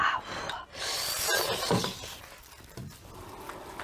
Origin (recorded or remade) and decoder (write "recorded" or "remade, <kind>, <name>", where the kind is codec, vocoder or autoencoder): recorded